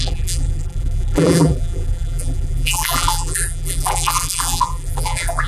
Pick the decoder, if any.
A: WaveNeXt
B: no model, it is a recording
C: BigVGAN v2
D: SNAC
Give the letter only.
C